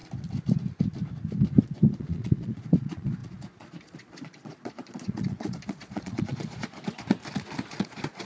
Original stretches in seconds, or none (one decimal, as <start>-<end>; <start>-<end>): 0.0-1.6; 7.2-7.7